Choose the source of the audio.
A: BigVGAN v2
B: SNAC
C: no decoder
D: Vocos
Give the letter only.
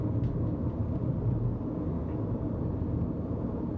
C